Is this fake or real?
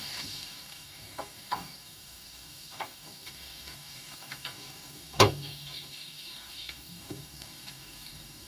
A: fake